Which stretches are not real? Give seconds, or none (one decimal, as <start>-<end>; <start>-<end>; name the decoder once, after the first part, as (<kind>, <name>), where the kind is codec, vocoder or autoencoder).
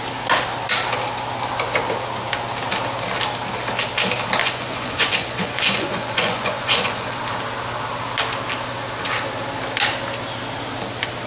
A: 4.4-7.2 (vocoder, Vocos)